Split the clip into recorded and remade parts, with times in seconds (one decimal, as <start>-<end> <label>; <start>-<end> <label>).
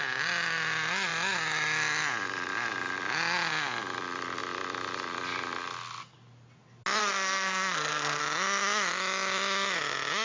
0.0-7.0 recorded; 7.0-8.2 remade; 8.2-10.2 recorded